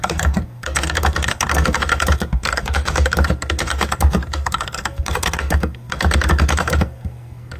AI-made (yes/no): yes